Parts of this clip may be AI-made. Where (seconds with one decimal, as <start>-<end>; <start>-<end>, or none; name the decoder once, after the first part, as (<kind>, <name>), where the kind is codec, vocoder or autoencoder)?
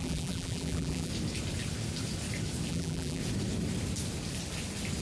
0.0-1.1 (vocoder, BigVGAN v2); 2.7-3.2